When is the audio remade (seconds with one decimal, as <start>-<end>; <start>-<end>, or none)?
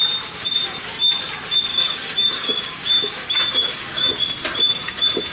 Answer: 1.7-4.2